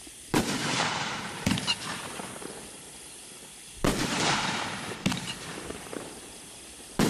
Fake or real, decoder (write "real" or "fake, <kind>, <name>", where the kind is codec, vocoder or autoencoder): fake, vocoder, BigVGAN v2